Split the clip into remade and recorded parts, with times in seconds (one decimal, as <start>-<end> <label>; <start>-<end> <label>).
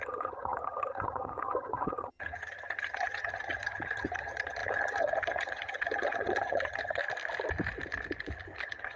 0.0-7.0 remade; 7.0-8.6 recorded; 8.6-9.0 remade